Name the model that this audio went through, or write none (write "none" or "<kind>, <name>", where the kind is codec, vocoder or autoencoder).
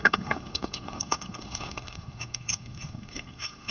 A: codec, SNAC